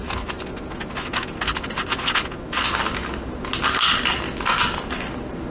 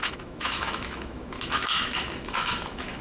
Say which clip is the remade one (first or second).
second